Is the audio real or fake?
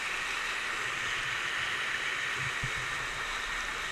real